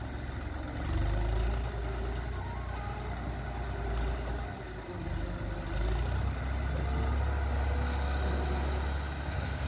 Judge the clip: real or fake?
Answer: real